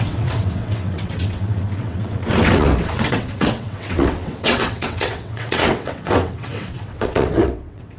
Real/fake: fake